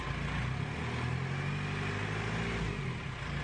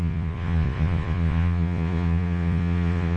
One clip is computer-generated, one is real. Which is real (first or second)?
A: first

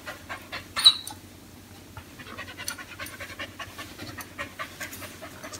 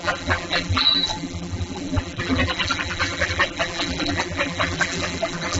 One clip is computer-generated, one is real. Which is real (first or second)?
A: first